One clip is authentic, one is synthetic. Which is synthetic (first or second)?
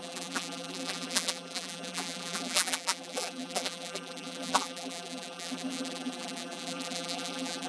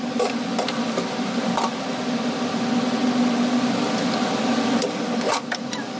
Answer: first